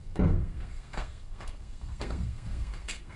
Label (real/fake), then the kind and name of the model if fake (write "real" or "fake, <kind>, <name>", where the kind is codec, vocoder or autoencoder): fake, codec, SNAC